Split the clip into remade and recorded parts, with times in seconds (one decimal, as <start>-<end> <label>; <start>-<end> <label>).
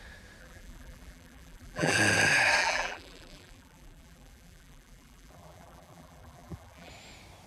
0.0-0.4 recorded; 0.4-2.0 remade; 2.0-2.6 recorded; 2.6-6.9 remade; 6.9-7.5 recorded